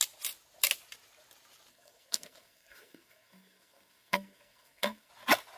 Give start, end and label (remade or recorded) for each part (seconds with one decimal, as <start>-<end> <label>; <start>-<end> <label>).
0.0-1.7 recorded; 1.7-5.1 remade; 5.1-5.6 recorded